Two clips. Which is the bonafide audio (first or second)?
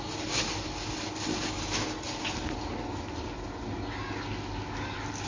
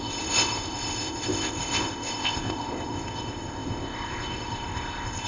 first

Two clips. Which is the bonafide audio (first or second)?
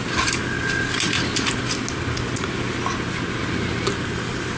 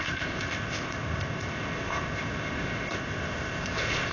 first